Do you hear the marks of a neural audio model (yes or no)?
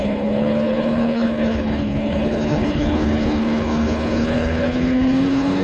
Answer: yes